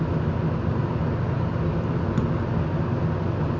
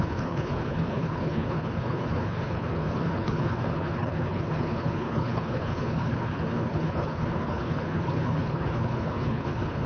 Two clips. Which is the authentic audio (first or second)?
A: first